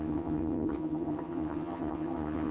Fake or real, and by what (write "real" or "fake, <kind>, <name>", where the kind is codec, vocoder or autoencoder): fake, vocoder, HiFi-GAN